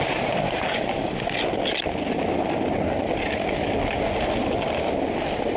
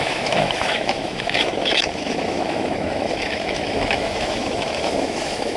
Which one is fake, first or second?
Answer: second